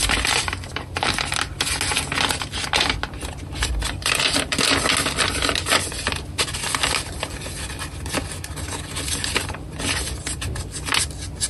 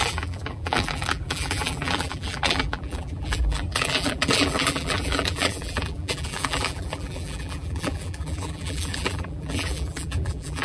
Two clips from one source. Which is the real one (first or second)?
first